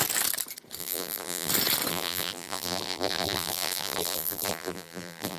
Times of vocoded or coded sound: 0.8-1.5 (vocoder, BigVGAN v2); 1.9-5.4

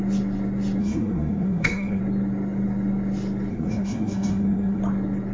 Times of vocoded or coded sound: 0.8-2.0 (codec, SNAC); 3.5-4.8

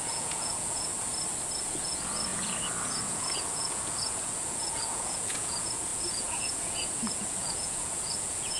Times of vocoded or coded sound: 0.0-0.9 (vocoder, Vocos); 1.6-8.6

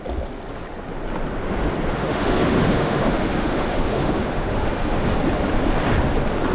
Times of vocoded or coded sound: 2.0-5.1 (autoencoder, DAC-VAE)

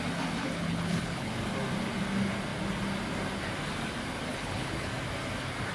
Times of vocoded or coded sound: 0.4-1.3 (codec, HILCodec); 4.3-4.9

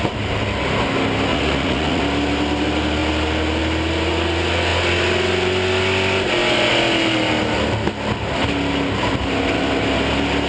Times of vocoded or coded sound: 1.3-2.0 (vocoder, Vocos)

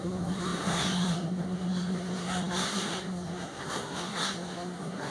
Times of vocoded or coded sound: 0.0-5.1 (codec, SNAC)